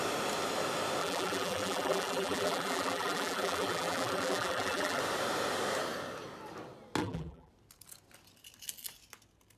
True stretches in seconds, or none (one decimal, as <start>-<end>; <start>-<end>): 0.0-1.0; 5.0-7.0; 7.5-9.6